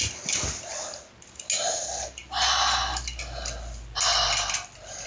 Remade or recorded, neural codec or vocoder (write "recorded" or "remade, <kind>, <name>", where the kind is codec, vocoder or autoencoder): recorded